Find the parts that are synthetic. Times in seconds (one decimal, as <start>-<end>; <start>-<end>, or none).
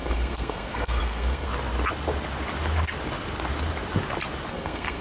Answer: 0.0-1.5; 4.5-5.0